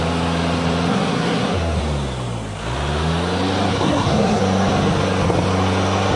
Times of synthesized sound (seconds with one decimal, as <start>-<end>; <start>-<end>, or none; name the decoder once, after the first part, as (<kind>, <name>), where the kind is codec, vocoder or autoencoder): 0.9-1.8 (codec, SNAC); 3.7-4.4